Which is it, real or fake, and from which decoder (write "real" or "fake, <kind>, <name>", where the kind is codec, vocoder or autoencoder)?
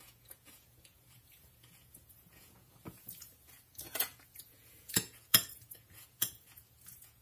fake, vocoder, Vocos